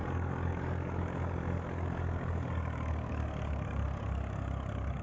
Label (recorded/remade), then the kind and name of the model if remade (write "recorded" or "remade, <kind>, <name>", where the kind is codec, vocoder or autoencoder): remade, codec, DAC